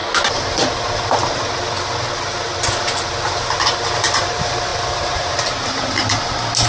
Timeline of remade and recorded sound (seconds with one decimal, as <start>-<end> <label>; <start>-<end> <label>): 0.0-4.0 recorded; 4.0-6.7 remade